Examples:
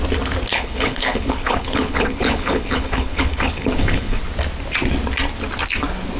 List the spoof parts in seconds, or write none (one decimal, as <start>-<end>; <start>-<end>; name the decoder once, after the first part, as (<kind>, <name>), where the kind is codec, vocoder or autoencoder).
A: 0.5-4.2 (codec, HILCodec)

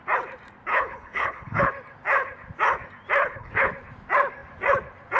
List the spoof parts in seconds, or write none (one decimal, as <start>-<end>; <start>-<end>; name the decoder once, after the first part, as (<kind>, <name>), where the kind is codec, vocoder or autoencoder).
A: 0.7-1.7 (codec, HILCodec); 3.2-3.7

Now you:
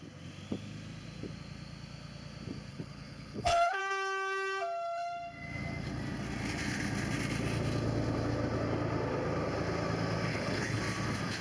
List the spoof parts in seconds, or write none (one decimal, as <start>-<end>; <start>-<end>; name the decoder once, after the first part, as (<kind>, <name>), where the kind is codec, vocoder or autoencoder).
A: 2.7-3.8 (codec, HILCodec); 10.3-10.8

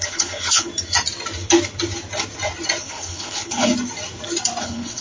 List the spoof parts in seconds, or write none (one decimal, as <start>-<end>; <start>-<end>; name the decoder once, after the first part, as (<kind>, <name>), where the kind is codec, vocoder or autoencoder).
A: 0.0-0.7 (codec, HILCodec); 2.8-3.7; 4.6-5.0

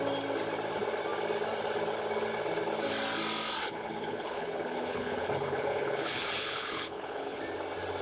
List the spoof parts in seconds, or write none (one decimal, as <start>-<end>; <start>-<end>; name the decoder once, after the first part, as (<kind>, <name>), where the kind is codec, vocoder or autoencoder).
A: 3.6-7.4 (codec, HILCodec)

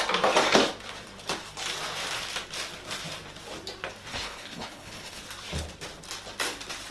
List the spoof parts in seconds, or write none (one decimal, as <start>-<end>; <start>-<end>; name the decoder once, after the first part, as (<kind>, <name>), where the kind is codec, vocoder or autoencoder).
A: 4.1-5.2 (codec, HILCodec)